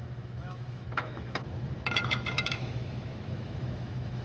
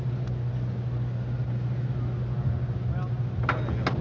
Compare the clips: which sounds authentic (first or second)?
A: second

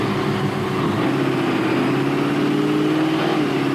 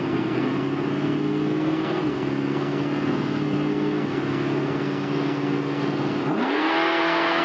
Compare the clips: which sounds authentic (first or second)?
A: first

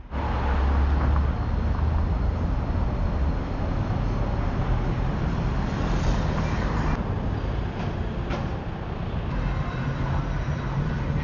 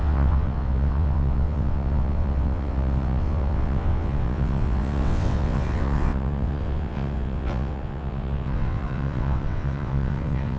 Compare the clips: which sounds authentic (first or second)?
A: first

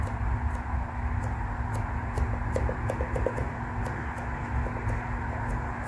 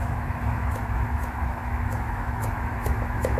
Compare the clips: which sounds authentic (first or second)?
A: first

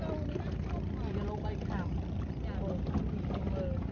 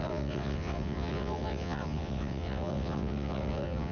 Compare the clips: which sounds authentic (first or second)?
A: first